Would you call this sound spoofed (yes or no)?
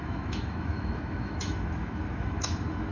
yes